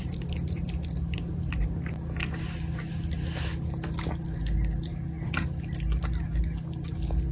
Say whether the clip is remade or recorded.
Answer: recorded